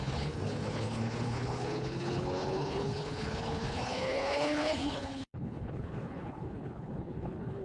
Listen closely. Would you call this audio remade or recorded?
remade